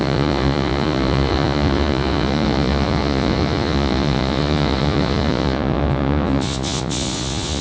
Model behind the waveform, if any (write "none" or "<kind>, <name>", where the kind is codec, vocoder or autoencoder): vocoder, Vocos